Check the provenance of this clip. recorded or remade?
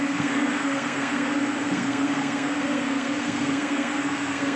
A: remade